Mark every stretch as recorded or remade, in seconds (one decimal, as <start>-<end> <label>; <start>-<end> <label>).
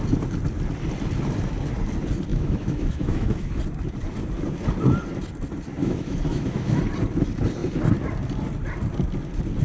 0.0-2.3 recorded; 2.3-3.6 remade; 3.6-5.8 recorded; 5.8-6.8 remade; 6.8-9.6 recorded